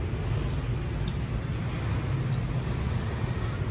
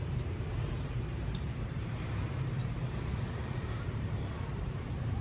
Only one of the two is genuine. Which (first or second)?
first